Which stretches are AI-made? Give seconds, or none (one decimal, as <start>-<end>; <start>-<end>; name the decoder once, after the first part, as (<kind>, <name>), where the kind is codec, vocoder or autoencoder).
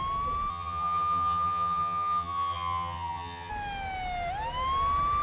0.5-3.5 (vocoder, HiFi-GAN)